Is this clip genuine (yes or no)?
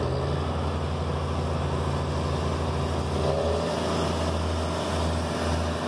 yes